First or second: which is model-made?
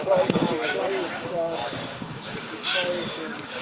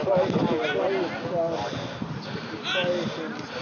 first